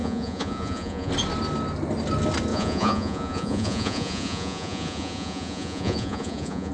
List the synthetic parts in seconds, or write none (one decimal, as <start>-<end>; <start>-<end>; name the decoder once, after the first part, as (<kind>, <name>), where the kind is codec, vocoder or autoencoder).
0.0-1.1 (vocoder, Vocos); 2.5-6.7